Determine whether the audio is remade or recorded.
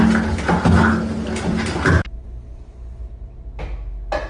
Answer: recorded